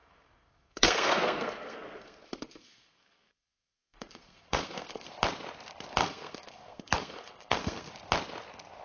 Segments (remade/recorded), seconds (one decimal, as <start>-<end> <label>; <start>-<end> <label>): 0.0-5.1 remade; 5.1-6.0 recorded; 6.0-7.9 remade; 7.9-8.8 recorded